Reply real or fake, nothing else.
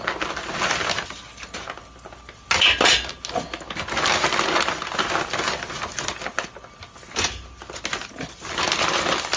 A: real